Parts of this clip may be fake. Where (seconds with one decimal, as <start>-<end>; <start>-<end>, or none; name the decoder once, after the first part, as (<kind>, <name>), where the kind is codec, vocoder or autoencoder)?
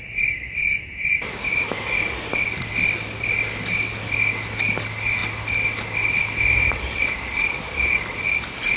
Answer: none